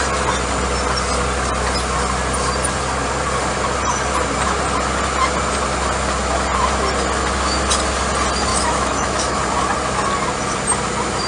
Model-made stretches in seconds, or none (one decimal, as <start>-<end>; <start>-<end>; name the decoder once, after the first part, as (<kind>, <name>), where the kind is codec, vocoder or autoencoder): 8.5-9.4 (autoencoder, DAC-VAE)